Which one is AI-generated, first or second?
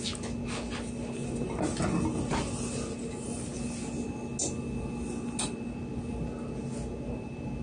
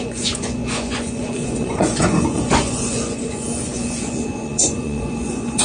second